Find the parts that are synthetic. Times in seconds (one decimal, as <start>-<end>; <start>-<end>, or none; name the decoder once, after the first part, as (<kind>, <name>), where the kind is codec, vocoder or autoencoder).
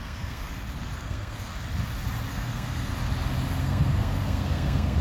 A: 0.0-0.5 (codec, SNAC); 1.0-1.5; 2.3-2.9; 3.6-5.0